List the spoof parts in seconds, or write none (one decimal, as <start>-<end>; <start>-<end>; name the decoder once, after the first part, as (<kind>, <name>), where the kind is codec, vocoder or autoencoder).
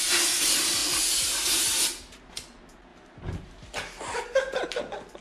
0.8-2.3 (vocoder, BigVGAN v2); 2.9-4.8